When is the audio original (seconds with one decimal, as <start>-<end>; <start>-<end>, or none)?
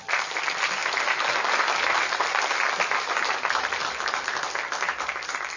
0.0-5.6